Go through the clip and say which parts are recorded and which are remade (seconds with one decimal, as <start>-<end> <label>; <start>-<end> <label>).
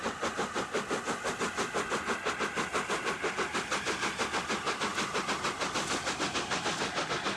0.0-7.4 recorded